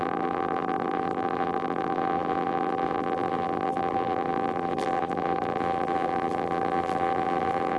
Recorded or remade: remade